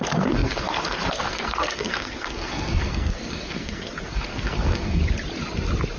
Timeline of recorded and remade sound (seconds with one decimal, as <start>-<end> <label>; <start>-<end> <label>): 0.0-5.0 remade; 5.0-6.0 recorded